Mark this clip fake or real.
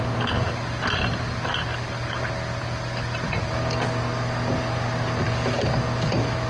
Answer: real